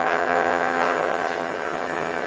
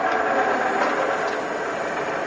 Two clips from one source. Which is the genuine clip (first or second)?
second